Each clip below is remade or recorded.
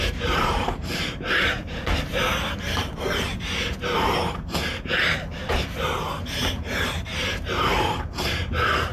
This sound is remade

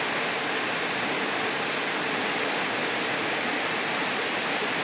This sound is recorded